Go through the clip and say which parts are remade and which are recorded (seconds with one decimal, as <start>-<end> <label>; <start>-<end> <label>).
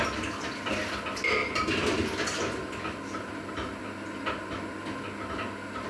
0.0-5.9 recorded